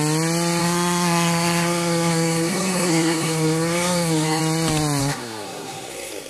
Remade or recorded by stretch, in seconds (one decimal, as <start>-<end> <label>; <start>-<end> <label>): 0.0-0.6 recorded; 0.6-4.4 remade; 4.4-5.0 recorded; 5.0-6.3 remade